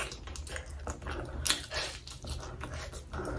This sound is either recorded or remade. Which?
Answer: recorded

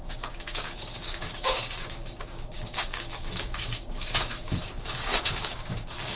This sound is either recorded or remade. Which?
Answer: remade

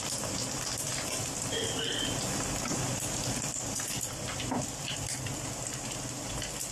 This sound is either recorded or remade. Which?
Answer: recorded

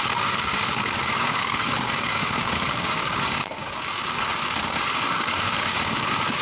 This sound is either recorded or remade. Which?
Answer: remade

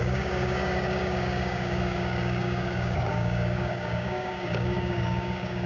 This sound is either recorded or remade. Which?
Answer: remade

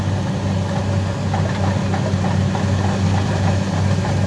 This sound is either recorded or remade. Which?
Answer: recorded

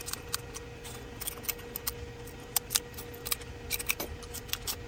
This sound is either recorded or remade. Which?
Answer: recorded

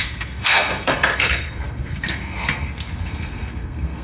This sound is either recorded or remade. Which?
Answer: remade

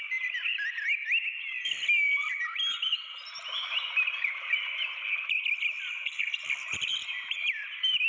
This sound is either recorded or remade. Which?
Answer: recorded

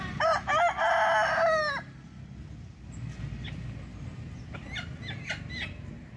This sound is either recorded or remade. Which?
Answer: recorded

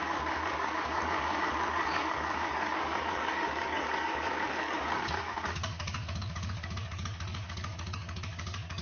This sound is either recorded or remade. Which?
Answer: remade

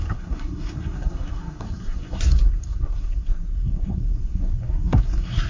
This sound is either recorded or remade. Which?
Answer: remade